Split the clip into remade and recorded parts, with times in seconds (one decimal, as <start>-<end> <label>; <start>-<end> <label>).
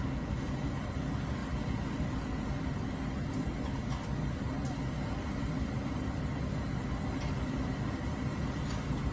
0.0-9.1 recorded